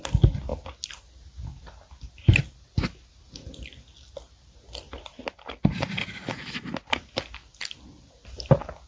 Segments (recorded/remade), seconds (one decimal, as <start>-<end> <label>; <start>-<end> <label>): 0.0-8.9 recorded